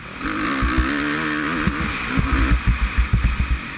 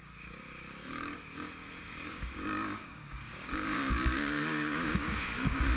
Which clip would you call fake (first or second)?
second